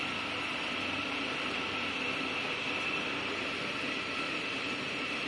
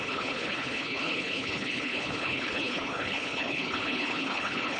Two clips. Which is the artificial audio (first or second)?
second